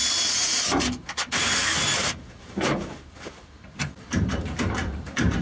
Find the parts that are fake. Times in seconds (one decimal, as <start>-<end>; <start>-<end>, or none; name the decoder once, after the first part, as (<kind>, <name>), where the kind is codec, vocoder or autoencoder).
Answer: 2.0-5.4 (vocoder, BigVGAN v2)